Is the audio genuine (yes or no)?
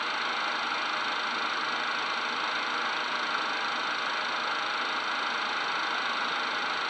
yes